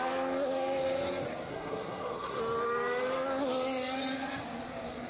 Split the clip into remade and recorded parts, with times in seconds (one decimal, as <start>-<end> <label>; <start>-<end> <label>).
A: 0.0-1.5 recorded; 1.5-2.4 remade; 2.4-5.1 recorded